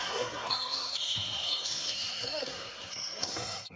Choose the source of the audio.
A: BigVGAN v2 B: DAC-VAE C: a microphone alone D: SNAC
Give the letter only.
D